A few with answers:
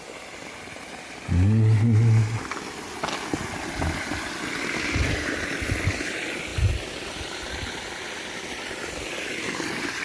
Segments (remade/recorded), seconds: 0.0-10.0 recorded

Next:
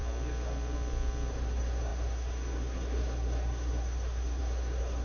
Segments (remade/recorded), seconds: 0.0-1.3 recorded; 1.3-5.0 remade

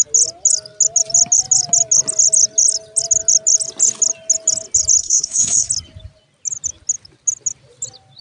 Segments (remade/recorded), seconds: 0.0-5.0 recorded; 5.0-5.7 remade; 5.7-8.2 recorded

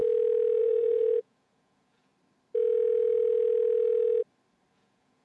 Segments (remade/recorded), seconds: 0.0-0.6 recorded; 0.6-2.1 remade; 2.1-4.7 recorded; 4.7-5.2 remade